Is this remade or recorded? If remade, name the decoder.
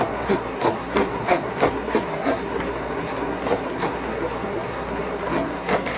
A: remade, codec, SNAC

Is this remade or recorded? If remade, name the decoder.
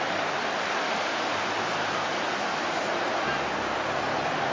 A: remade, vocoder, BigVGAN v2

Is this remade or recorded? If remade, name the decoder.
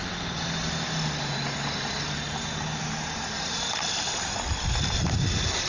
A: recorded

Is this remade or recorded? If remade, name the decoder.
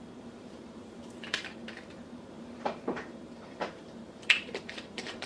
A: remade, vocoder, BigVGAN v2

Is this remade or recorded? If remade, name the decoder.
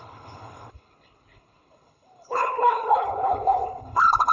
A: remade, codec, HILCodec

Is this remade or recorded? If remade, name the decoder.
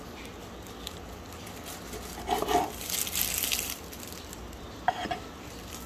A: recorded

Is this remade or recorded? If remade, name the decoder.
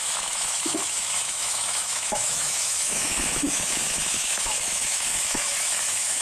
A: remade, autoencoder, DAC-VAE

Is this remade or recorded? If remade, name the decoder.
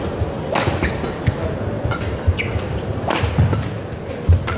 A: recorded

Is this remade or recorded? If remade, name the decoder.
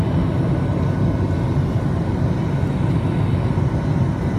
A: recorded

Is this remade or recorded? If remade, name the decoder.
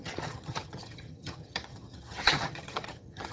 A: remade, vocoder, HiFi-GAN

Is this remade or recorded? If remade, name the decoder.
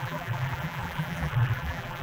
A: remade, vocoder, BigVGAN v2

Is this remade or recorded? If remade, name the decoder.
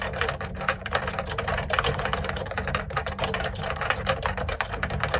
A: remade, vocoder, BigVGAN v2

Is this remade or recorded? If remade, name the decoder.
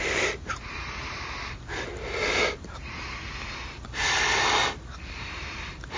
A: recorded